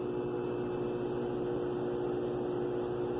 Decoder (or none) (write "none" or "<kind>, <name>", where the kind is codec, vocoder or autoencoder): none